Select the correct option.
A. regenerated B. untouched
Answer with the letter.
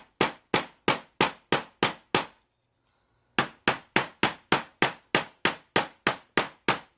B